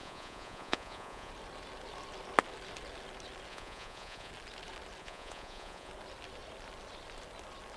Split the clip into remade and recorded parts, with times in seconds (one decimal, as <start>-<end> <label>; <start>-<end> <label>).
0.0-1.3 remade; 1.3-3.5 recorded; 3.5-4.3 remade; 4.3-5.0 recorded; 5.0-5.9 remade; 5.9-7.8 recorded